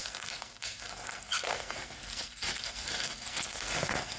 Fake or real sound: fake